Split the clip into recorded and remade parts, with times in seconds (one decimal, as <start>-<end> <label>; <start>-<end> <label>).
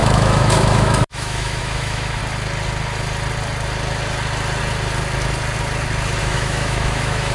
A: 0.0-2.2 remade; 2.2-6.2 recorded; 6.2-7.3 remade